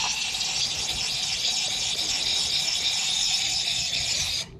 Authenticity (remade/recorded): recorded